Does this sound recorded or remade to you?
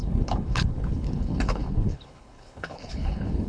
remade